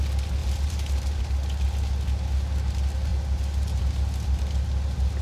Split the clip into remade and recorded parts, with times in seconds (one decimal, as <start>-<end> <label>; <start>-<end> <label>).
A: 0.0-0.4 recorded; 0.4-1.2 remade; 1.2-5.2 recorded